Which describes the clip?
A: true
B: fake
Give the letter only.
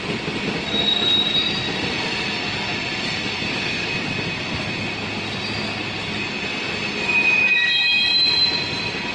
A